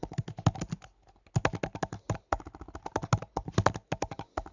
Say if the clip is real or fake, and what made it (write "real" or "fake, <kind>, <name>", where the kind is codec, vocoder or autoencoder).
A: real